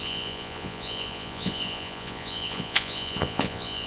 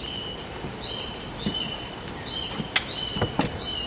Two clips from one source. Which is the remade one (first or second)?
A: first